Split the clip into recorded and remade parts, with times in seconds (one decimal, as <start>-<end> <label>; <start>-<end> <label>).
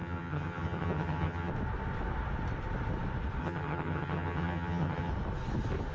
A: 0.0-1.5 remade; 1.5-3.4 recorded; 3.4-5.1 remade; 5.1-5.9 recorded